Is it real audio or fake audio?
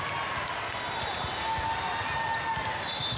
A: real